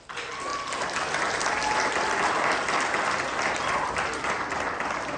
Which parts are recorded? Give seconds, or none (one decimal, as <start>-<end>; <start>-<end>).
0.0-5.2